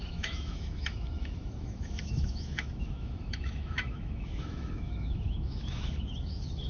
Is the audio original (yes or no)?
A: no